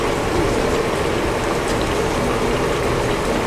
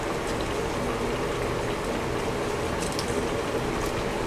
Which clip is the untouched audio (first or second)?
second